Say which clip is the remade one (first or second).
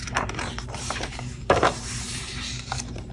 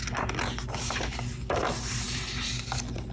first